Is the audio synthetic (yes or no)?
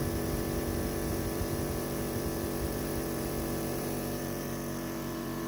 yes